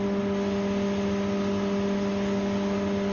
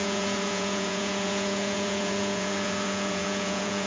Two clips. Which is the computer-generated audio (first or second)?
second